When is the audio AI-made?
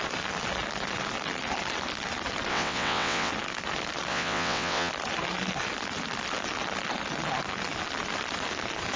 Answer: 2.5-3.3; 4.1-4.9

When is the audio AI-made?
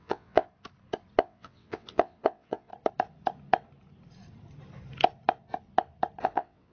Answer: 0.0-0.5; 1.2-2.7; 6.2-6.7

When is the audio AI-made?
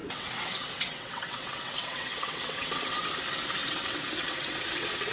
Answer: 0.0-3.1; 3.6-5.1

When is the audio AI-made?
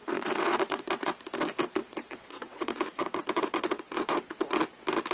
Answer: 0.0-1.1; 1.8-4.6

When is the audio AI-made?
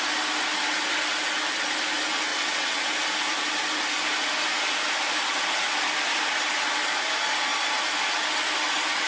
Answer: 2.3-2.9